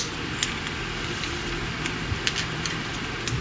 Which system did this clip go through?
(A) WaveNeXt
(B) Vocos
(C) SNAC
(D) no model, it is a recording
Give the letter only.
D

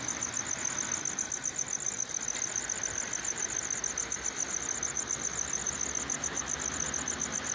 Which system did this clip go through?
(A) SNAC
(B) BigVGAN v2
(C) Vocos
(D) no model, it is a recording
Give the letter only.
D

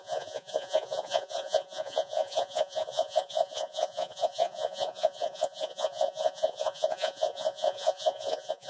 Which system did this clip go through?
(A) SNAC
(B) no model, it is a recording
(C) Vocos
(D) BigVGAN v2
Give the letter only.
C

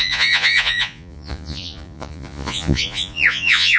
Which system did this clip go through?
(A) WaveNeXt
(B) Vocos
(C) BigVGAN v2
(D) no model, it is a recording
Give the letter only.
B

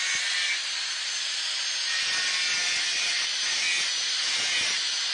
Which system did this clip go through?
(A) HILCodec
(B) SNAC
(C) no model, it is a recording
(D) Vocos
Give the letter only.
C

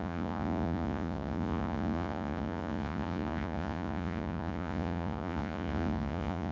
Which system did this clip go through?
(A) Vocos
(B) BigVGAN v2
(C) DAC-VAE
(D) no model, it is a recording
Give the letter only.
A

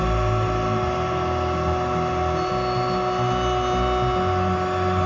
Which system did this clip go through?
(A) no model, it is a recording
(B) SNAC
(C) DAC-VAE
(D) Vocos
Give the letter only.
A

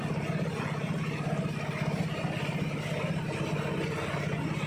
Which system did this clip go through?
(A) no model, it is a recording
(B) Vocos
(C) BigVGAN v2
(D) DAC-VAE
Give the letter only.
A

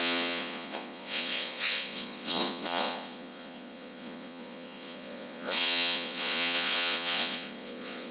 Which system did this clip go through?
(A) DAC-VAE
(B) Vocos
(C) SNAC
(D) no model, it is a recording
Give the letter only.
B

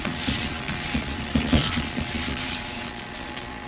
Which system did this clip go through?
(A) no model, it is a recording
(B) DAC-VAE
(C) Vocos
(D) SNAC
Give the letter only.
C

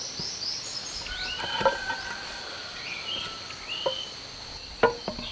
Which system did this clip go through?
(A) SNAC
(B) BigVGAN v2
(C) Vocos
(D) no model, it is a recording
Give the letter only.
D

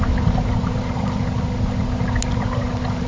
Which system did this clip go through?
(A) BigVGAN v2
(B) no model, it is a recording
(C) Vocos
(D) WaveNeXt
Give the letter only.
B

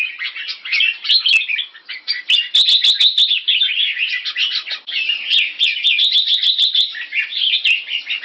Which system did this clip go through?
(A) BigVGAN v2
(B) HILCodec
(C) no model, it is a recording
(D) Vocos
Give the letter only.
C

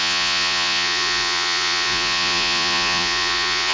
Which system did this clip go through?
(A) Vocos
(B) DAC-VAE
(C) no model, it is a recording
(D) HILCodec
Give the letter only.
A